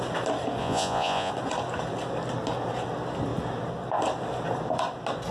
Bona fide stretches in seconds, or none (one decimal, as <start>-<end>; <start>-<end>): 0.0-0.6; 1.3-5.3